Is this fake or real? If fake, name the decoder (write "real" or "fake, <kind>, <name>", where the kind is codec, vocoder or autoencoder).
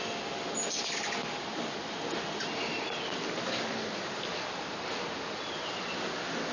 real